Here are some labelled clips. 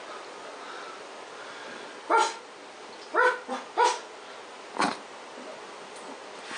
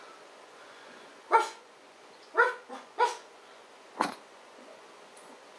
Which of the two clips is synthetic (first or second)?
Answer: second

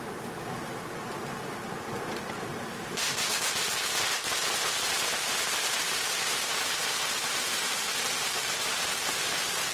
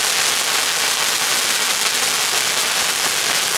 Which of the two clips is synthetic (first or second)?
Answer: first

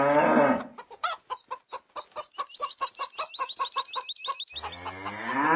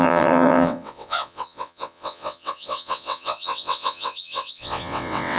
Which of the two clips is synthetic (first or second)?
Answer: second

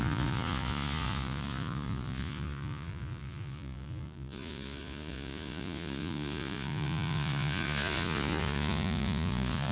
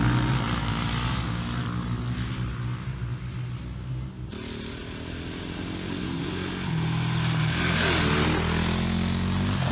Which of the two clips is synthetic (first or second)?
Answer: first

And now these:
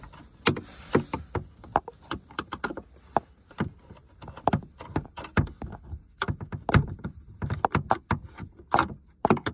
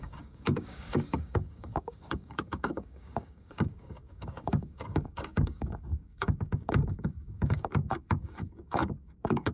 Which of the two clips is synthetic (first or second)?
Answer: second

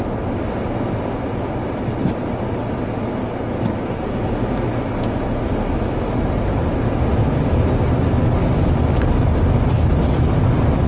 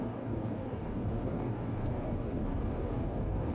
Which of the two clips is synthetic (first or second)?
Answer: second